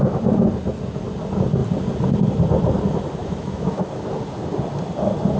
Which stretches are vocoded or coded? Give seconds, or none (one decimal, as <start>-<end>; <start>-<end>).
3.2-3.8